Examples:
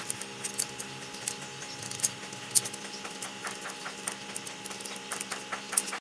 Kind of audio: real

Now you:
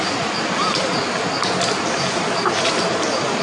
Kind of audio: real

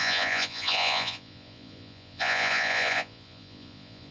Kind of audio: fake